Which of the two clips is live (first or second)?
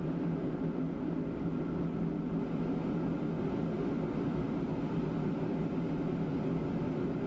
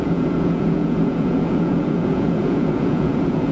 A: first